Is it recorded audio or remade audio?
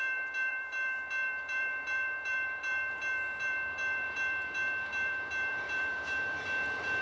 remade